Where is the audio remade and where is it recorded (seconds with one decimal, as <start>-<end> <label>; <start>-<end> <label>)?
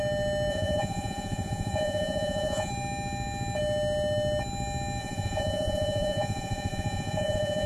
0.0-0.5 recorded; 0.5-2.7 remade; 2.7-5.0 recorded; 5.0-7.7 remade